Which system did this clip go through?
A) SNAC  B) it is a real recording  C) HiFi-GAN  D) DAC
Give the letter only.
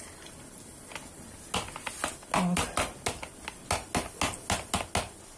B